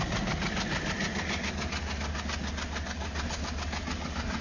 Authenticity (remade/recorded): recorded